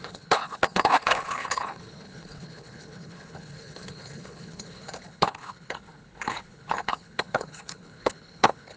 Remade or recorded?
remade